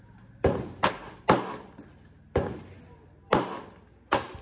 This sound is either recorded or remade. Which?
recorded